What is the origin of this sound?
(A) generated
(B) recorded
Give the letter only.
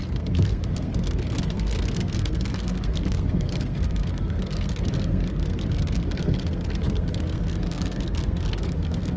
A